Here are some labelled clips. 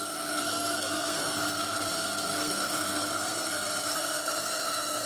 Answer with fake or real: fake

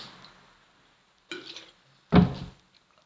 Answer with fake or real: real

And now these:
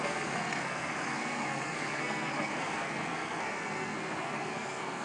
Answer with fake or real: fake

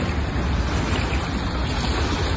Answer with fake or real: real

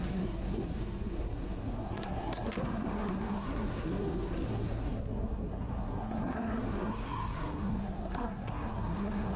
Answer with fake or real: fake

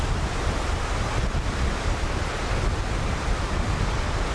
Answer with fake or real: real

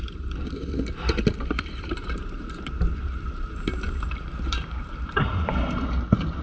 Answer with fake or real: fake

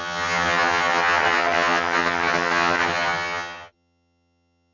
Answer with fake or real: fake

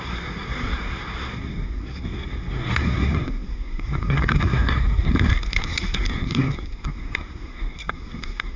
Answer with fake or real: fake